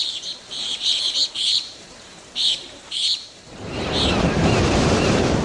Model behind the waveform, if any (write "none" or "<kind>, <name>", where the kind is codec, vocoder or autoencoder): vocoder, BigVGAN v2